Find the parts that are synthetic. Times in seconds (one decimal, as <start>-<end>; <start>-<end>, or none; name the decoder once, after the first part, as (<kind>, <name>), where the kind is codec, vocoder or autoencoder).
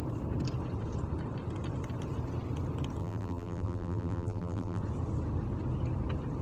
3.0-4.8 (vocoder, BigVGAN v2)